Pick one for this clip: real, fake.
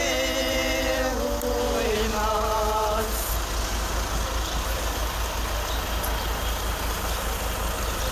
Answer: real